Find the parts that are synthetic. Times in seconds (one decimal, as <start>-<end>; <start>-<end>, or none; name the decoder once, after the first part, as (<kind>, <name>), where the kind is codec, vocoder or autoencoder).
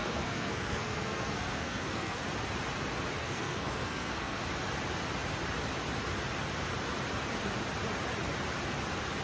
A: 0.0-2.2 (codec, SNAC); 3.2-4.4